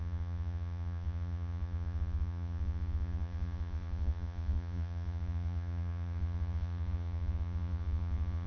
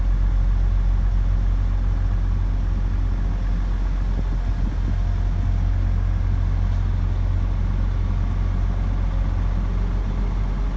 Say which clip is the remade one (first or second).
first